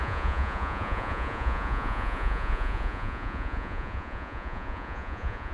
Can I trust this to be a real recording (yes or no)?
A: no